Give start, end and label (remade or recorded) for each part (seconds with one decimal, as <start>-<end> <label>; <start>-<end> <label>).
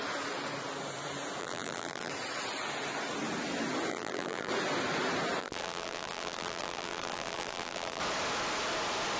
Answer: 0.0-1.4 recorded; 1.4-2.1 remade; 2.1-3.9 recorded; 3.9-4.5 remade; 4.5-5.4 recorded; 5.4-8.0 remade; 8.0-9.2 recorded